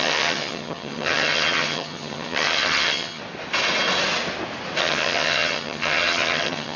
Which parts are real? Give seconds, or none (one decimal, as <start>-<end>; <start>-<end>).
3.2-4.8